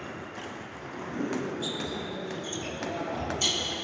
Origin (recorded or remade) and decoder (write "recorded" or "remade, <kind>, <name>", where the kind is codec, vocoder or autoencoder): recorded